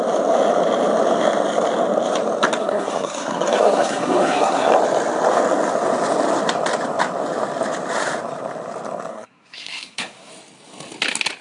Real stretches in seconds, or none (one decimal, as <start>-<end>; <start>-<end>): 0.0-2.6; 4.7-9.1; 10.3-11.4